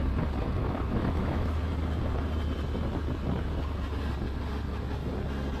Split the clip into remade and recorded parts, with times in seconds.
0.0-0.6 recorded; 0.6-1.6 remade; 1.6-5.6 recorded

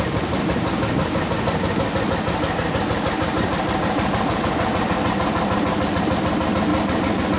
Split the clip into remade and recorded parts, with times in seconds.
0.0-7.4 recorded

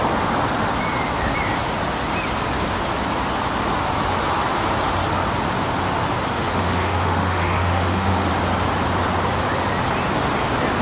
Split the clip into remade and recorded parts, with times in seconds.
0.0-6.3 recorded; 6.3-8.3 remade; 8.3-10.8 recorded

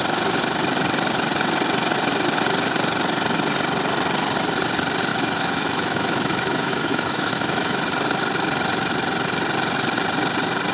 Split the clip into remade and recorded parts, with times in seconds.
0.0-5.1 recorded; 5.1-7.9 remade; 7.9-10.7 recorded

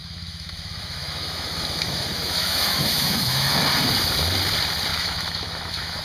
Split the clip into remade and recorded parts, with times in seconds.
0.0-3.6 remade; 3.6-4.9 recorded; 4.9-6.0 remade